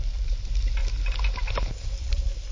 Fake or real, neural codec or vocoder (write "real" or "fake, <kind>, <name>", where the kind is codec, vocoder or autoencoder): real